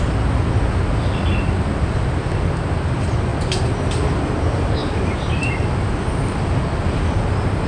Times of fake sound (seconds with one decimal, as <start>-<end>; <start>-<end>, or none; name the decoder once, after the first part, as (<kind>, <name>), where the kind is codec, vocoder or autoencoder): none